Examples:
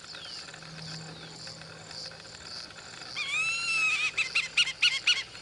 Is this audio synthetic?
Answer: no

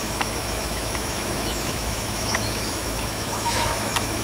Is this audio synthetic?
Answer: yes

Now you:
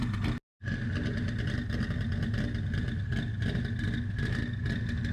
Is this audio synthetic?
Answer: no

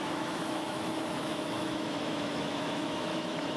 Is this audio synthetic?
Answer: yes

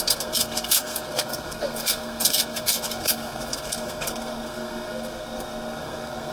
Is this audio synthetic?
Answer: yes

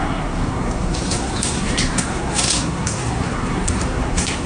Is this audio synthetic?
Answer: yes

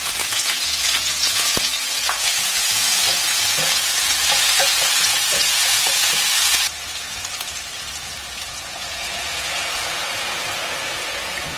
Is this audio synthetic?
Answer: yes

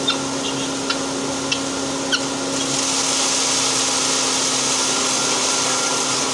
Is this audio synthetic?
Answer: no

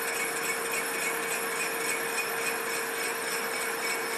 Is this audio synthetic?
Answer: no